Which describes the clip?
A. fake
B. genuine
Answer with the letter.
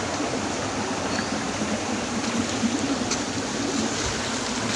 B